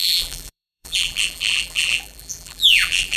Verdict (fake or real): fake